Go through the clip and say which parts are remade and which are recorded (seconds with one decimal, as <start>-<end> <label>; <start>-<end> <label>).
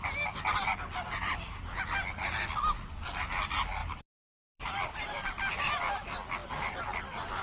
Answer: 0.0-0.7 recorded; 0.7-1.8 remade; 1.8-3.8 recorded; 3.8-5.7 remade; 5.7-7.4 recorded